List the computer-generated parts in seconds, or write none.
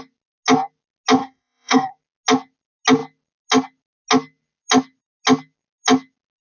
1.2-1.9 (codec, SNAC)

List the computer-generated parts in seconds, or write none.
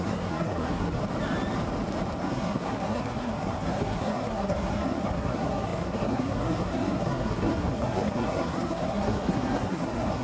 0.0-1.0 (codec, SNAC); 2.2-10.2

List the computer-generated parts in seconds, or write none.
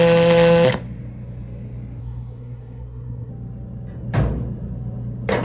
2.0-3.3 (codec, SNAC)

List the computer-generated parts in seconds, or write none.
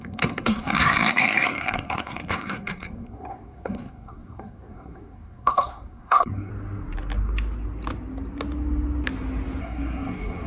0.0-6.5 (codec, SNAC); 9.6-10.5